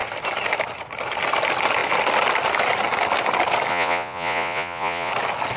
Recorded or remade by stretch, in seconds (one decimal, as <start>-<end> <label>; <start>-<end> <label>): 0.0-3.7 recorded; 3.7-5.1 remade; 5.1-5.6 recorded